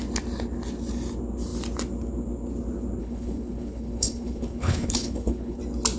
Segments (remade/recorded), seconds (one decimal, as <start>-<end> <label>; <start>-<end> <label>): 0.0-3.0 recorded; 3.0-5.6 remade; 5.6-6.0 recorded